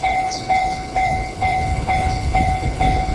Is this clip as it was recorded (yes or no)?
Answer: no